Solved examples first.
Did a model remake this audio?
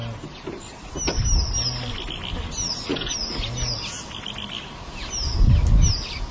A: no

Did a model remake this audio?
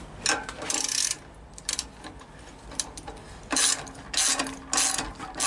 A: no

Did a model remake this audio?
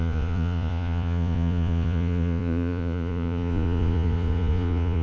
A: yes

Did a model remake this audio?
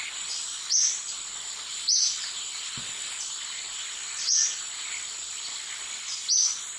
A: no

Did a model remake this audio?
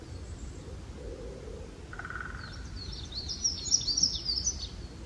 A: no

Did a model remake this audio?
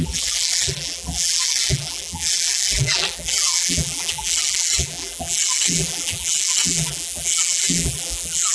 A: yes